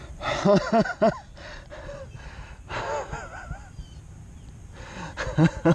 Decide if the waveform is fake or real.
real